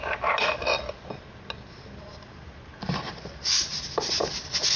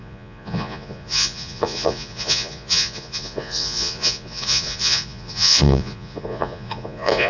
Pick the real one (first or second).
first